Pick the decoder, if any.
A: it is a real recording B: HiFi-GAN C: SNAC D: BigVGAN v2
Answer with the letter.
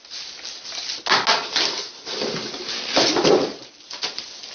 A